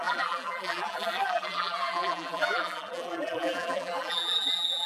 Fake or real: fake